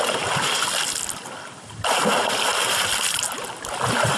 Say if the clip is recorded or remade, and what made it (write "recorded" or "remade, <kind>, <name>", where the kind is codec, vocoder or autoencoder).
recorded